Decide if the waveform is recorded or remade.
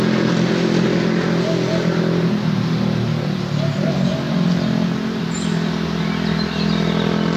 recorded